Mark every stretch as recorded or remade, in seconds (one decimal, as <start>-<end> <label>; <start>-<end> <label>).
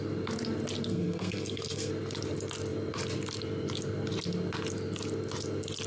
0.0-0.9 recorded; 0.9-1.9 remade; 1.9-5.9 recorded